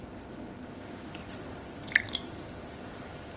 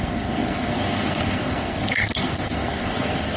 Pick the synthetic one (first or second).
second